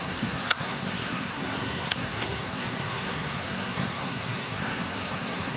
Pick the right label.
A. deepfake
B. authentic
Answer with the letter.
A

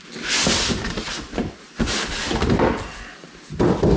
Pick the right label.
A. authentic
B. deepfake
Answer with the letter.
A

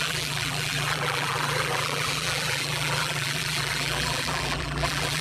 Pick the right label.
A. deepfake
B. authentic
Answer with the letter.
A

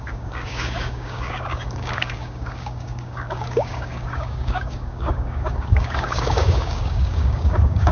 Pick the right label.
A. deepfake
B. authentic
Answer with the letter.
A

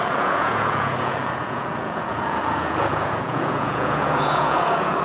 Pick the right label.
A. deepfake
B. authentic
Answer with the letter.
A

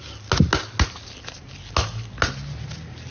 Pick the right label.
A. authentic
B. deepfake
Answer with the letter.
A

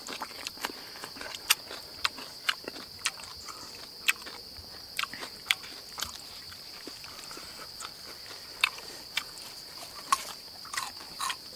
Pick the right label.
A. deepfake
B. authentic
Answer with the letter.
A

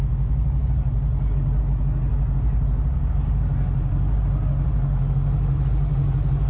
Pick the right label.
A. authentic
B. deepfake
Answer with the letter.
A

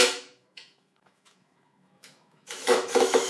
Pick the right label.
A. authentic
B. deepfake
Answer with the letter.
B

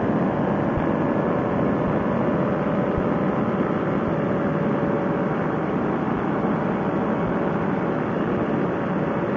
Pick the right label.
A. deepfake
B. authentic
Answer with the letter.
B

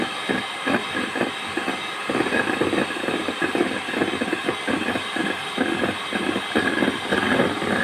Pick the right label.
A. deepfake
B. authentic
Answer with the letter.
A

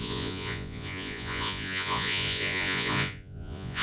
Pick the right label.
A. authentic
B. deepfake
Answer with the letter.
B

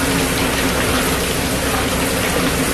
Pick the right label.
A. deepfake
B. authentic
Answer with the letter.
B